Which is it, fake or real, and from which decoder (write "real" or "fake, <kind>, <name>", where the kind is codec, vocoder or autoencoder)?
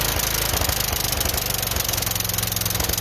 real